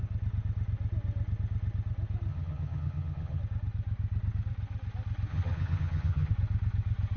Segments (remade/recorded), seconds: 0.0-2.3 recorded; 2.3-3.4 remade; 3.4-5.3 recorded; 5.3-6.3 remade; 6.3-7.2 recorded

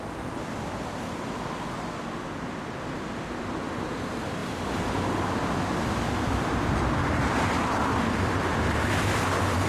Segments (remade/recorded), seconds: 0.0-7.0 recorded; 7.0-7.9 remade; 7.9-9.7 recorded

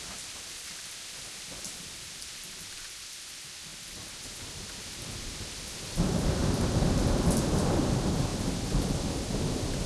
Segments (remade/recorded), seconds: 0.0-9.9 remade

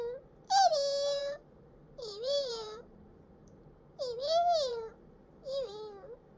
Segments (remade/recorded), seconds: 0.0-1.2 recorded; 1.2-4.0 remade; 4.0-4.7 recorded; 4.7-5.7 remade; 5.7-6.4 recorded

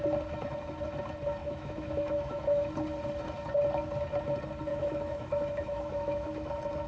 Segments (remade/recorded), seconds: 0.0-1.4 recorded; 1.4-2.7 remade; 2.7-4.7 recorded; 4.7-6.5 remade; 6.5-6.9 recorded

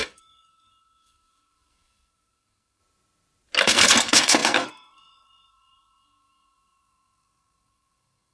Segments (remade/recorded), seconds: 0.0-2.8 remade; 2.8-3.6 recorded; 3.6-8.3 remade

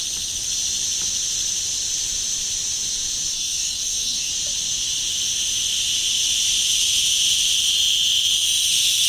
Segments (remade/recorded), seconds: 0.0-3.3 recorded; 3.3-4.3 remade; 4.3-9.1 recorded

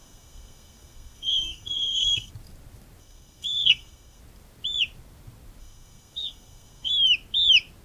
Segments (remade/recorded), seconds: 0.0-2.3 remade; 2.3-3.0 recorded; 3.0-4.2 remade; 4.2-5.6 recorded; 5.6-6.9 remade; 6.9-7.8 recorded